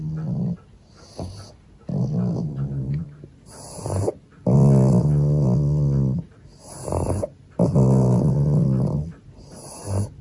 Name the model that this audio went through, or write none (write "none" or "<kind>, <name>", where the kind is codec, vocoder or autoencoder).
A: none